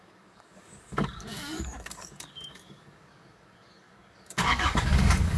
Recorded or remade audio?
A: remade